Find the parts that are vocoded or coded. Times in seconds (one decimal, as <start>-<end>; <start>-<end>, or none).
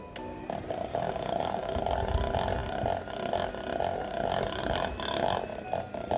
0.9-1.8